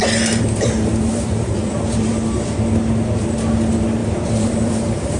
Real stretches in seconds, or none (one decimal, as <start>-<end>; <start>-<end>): 2.1-4.0